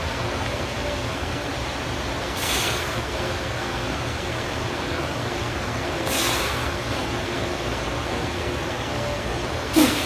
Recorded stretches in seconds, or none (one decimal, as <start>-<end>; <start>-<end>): 1.5-2.2